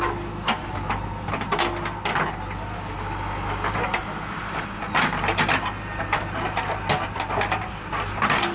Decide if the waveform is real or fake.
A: real